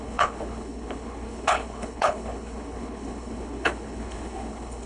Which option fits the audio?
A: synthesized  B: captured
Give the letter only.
A